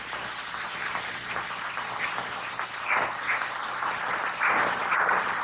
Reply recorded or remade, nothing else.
recorded